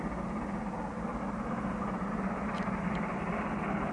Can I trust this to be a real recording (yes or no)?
yes